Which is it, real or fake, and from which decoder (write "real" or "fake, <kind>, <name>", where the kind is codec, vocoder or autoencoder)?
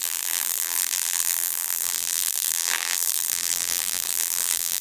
fake, vocoder, BigVGAN v2